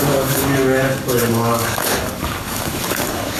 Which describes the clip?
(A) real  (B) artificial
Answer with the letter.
B